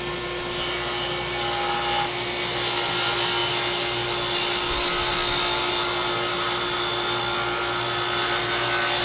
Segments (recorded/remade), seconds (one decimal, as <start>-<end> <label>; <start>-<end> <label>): 0.0-9.0 recorded